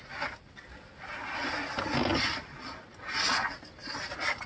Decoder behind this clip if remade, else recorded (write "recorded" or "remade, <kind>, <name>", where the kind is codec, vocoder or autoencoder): recorded